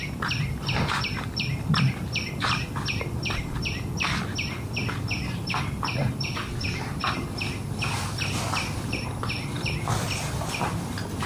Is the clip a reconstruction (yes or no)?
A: no